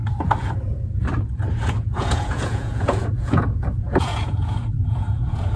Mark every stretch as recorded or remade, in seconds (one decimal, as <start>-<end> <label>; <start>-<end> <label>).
0.0-1.5 recorded; 1.5-5.6 remade